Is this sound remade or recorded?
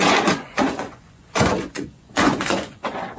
remade